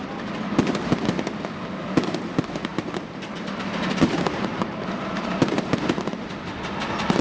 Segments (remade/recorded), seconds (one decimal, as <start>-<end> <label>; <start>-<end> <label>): 0.0-2.7 recorded; 2.7-5.8 remade; 5.8-7.2 recorded